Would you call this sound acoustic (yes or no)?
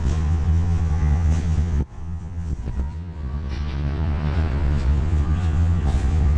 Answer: no